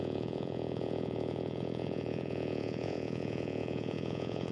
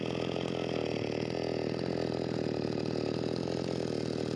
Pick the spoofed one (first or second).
first